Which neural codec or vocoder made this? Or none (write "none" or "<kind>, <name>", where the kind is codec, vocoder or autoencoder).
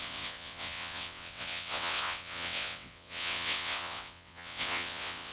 vocoder, WaveNeXt